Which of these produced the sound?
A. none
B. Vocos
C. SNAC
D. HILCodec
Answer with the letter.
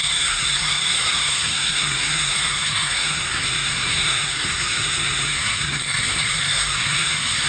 C